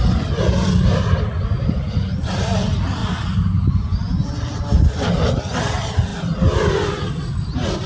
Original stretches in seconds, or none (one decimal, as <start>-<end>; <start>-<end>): 0.0-7.9